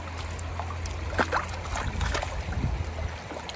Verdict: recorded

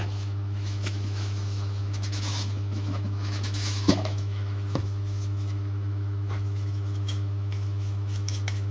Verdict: remade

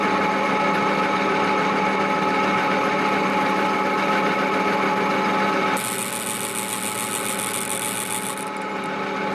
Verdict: recorded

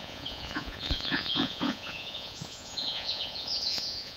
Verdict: remade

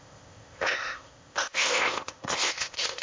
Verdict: remade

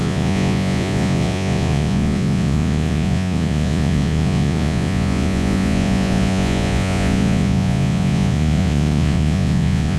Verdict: remade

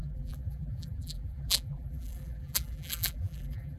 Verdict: remade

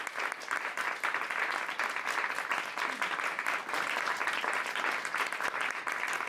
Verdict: recorded